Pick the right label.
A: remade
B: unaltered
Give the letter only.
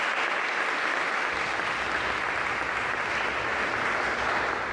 B